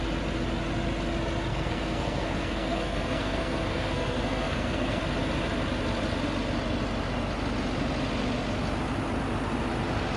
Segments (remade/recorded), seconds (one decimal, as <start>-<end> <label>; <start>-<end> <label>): 0.0-1.5 recorded; 1.5-5.0 remade; 5.0-10.2 recorded